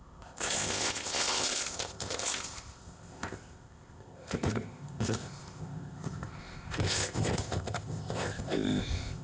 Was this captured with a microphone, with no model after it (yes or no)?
no